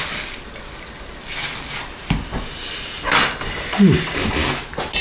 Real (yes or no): yes